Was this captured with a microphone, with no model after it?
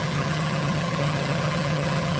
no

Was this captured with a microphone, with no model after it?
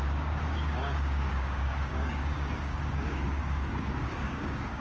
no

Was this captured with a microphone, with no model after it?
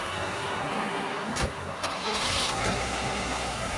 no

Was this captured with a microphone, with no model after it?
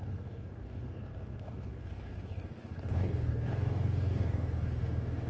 no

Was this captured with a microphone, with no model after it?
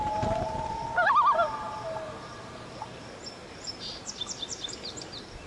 no